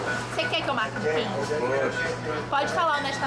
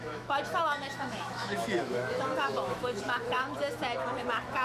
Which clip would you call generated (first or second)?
second